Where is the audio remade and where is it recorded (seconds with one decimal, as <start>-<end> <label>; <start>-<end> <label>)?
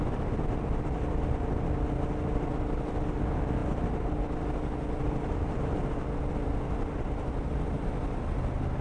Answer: 0.0-8.8 recorded